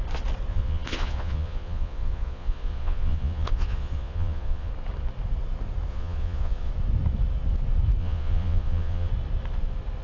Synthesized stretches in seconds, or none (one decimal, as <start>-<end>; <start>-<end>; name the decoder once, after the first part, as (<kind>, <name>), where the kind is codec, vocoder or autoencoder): 0.5-4.7 (vocoder, Vocos); 5.9-6.7; 8.0-9.1

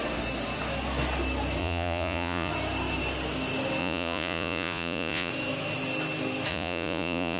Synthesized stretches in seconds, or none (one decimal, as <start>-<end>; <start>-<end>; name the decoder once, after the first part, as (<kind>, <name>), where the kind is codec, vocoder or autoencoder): 1.6-2.5 (vocoder, Vocos); 3.8-5.3; 6.5-7.4

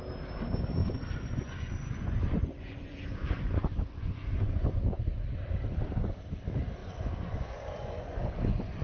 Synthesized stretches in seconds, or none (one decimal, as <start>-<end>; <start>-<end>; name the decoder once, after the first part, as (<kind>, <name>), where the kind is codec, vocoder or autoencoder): 0.8-4.8 (vocoder, Vocos); 6.8-8.8

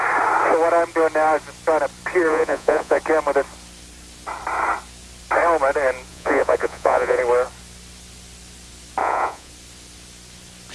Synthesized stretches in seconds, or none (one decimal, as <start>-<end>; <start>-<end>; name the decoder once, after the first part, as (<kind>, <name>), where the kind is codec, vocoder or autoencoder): 2.3-3.0 (vocoder, Vocos); 6.1-7.2; 9.0-9.5

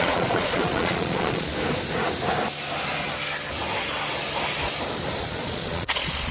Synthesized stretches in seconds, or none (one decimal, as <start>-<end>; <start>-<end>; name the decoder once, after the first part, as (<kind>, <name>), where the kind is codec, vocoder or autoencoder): 0.0-1.5 (vocoder, Vocos); 5.2-6.3

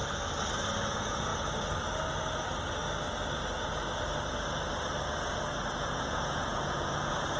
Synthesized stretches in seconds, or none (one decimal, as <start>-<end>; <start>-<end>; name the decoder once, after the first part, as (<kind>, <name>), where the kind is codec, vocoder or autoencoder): 0.9-1.3 (vocoder, Vocos); 5.7-7.4